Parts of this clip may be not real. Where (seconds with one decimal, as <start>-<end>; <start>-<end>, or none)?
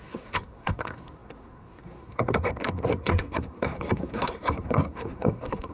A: 0.0-5.7